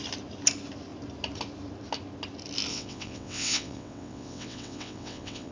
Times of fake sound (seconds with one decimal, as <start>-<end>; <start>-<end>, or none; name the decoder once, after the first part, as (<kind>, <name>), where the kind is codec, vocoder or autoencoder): 2.7-5.5 (vocoder, WaveNeXt)